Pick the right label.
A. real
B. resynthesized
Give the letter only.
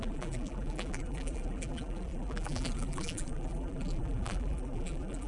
B